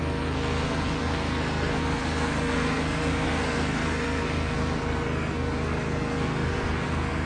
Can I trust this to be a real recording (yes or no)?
no